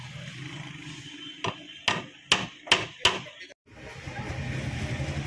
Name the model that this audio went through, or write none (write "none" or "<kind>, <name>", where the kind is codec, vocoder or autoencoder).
none